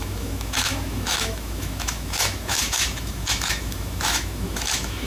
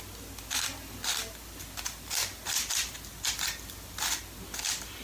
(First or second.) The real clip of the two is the second